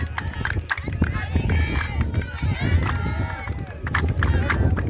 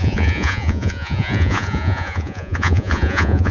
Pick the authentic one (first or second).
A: first